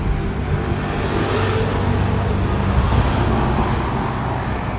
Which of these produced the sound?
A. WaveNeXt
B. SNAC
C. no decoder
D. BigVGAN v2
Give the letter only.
C